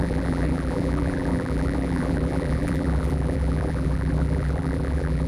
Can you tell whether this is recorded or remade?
remade